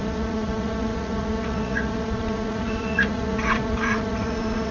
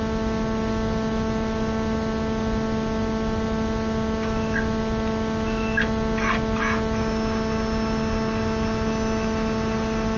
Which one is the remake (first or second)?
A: first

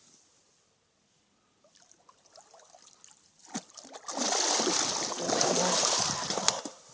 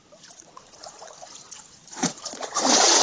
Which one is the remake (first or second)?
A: second